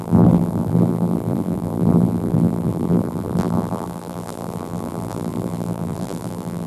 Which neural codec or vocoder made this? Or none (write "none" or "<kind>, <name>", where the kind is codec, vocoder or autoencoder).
vocoder, BigVGAN v2